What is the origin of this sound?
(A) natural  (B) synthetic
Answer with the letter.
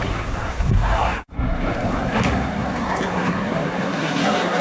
B